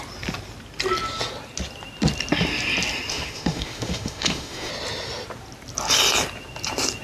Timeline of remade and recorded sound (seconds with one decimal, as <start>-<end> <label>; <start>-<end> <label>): 0.0-3.1 recorded; 3.1-4.7 remade; 4.7-7.0 recorded